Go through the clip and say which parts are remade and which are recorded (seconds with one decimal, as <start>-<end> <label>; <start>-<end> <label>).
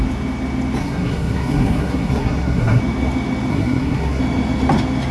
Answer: 0.0-0.8 recorded; 0.8-2.8 remade; 2.8-3.5 recorded; 3.5-4.2 remade; 4.2-5.1 recorded